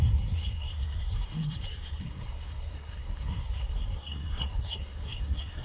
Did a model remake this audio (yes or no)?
yes